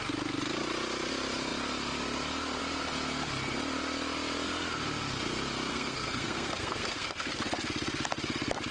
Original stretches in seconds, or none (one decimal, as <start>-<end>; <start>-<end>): 0.0-5.7; 7.3-8.7